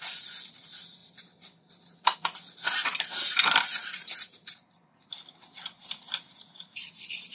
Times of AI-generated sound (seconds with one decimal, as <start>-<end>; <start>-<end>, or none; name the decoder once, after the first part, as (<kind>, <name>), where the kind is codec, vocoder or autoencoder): 1.0-3.0 (vocoder, BigVGAN v2); 3.8-7.3

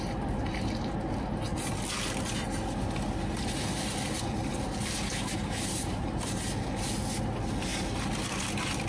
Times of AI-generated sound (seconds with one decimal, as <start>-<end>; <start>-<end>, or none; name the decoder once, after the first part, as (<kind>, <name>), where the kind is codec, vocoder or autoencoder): 5.4-6.3 (vocoder, BigVGAN v2)

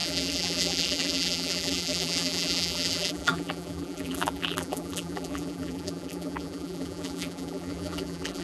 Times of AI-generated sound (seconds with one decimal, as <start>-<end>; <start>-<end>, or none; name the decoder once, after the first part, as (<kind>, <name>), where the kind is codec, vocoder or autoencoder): 0.0-8.4 (vocoder, BigVGAN v2)

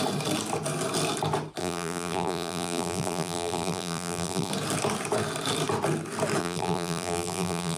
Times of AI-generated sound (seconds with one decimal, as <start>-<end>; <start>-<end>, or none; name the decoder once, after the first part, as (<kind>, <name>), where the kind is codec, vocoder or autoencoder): 1.6-4.5 (vocoder, BigVGAN v2); 6.4-7.8

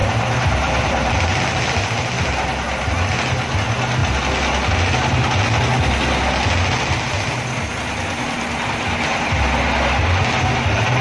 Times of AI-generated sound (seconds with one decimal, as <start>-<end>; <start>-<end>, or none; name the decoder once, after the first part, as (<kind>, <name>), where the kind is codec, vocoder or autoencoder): 0.0-1.4 (vocoder, BigVGAN v2)

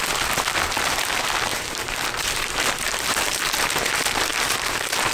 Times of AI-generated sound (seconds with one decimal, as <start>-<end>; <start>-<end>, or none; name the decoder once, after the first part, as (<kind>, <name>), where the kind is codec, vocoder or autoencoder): 1.5-3.9 (vocoder, BigVGAN v2)